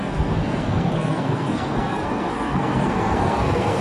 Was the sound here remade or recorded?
remade